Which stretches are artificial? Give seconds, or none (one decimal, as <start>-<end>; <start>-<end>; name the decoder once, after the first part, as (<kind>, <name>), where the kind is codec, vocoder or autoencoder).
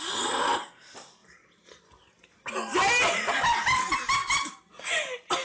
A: none